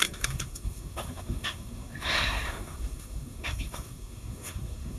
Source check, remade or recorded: remade